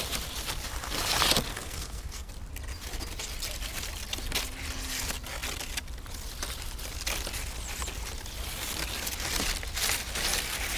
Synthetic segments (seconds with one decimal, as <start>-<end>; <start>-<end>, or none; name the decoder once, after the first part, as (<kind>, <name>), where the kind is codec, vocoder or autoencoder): 1.5-2.3 (codec, SNAC)